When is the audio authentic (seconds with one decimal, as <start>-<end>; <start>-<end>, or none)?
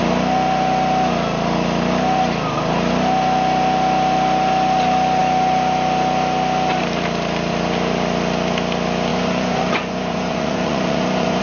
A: 0.0-9.1